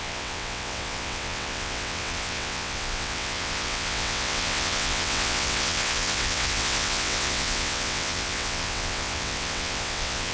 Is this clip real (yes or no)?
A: no